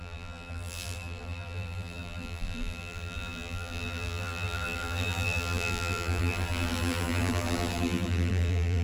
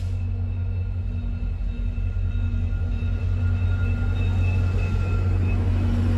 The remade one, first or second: first